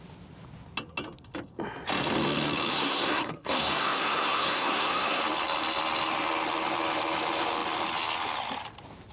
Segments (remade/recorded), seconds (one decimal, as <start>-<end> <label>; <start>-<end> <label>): 0.0-2.7 recorded; 2.7-5.2 remade; 5.2-9.1 recorded